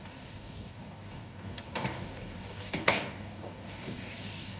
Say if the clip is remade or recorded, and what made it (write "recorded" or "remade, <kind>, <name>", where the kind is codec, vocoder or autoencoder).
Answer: remade, codec, DAC